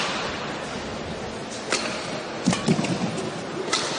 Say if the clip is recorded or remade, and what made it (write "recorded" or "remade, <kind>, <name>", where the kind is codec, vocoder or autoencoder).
recorded